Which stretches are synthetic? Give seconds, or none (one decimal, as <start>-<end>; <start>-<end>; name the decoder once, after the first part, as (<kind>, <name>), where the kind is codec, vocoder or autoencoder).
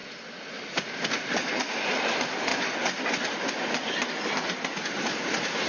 1.5-2.5 (vocoder, BigVGAN v2); 4.9-5.7